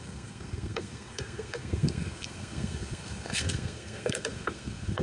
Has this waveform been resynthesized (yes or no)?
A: yes